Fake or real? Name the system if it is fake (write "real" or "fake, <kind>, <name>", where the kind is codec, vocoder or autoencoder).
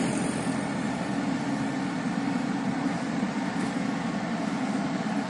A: fake, vocoder, BigVGAN v2